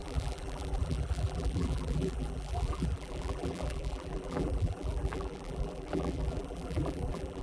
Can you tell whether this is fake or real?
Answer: fake